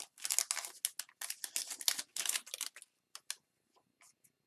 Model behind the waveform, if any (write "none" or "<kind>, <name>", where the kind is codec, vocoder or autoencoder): none